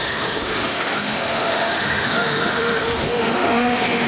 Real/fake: fake